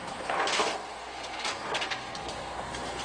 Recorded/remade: remade